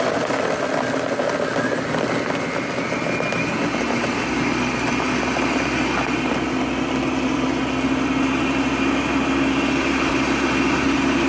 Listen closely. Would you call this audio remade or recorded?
recorded